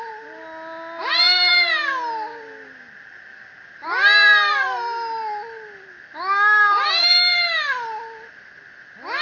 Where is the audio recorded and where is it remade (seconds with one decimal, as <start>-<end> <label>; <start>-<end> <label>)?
0.0-9.2 recorded